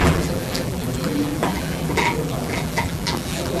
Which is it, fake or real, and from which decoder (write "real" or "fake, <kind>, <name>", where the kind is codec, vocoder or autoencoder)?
fake, vocoder, BigVGAN v2